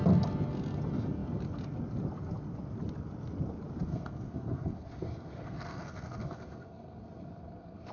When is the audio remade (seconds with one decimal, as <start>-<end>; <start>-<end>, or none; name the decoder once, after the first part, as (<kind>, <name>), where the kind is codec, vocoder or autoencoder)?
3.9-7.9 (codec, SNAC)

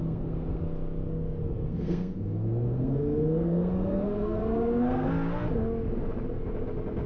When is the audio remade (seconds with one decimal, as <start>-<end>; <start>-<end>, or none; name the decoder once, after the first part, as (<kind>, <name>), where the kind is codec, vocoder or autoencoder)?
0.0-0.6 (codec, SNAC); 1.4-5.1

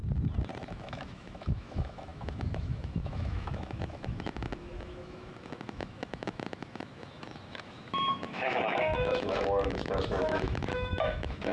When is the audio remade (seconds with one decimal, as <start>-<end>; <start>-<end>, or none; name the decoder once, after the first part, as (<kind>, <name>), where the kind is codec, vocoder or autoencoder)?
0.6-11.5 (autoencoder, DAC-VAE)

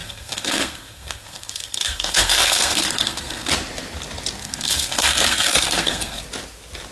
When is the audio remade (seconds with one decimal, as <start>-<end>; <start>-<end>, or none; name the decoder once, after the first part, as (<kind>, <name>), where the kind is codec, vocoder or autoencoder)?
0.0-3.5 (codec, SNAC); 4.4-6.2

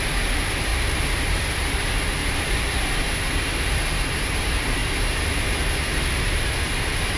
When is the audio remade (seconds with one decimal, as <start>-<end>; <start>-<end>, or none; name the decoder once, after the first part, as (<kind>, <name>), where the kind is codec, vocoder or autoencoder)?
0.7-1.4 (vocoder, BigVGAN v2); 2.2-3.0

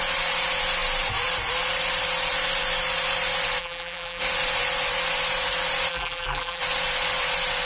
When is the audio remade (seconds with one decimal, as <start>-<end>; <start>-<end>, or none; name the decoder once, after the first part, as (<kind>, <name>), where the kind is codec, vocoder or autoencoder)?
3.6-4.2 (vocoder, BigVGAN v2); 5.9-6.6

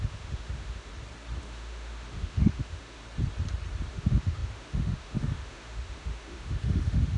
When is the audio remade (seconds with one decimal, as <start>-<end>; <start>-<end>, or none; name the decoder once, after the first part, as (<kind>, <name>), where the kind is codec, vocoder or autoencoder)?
0.0-0.9 (autoencoder, DAC-VAE); 1.4-3.0; 3.9-7.2

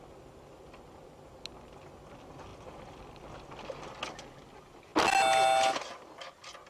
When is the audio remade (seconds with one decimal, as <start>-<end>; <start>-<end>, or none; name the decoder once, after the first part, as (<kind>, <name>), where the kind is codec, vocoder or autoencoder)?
none